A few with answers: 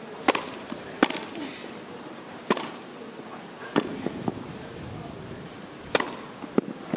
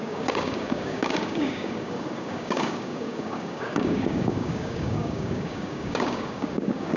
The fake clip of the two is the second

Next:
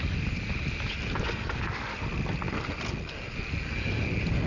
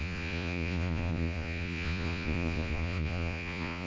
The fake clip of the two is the second